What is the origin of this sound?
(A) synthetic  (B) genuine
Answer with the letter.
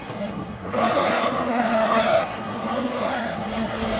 A